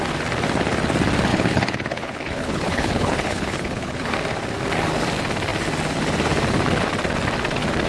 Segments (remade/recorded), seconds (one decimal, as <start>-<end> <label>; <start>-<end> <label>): 0.0-1.3 recorded; 1.3-4.1 remade; 4.1-7.9 recorded